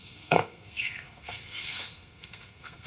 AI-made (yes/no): yes